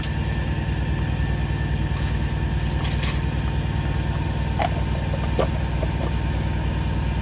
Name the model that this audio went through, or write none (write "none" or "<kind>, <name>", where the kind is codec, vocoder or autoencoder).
none